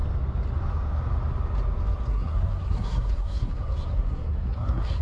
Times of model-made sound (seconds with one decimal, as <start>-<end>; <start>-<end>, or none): 2.1-5.0